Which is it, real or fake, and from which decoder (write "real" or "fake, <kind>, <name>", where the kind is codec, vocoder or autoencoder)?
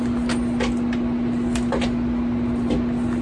real